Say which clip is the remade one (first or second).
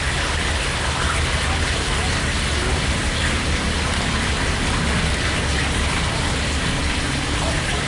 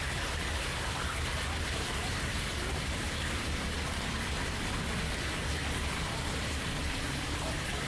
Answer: second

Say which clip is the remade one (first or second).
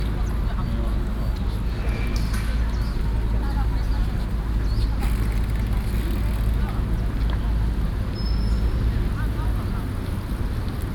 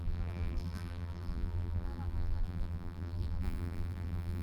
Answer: second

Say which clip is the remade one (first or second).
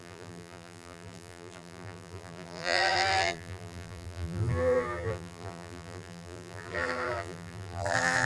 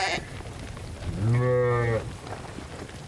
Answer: first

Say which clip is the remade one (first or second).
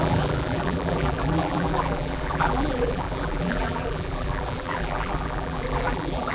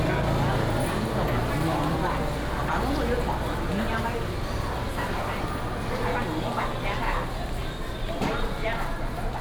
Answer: first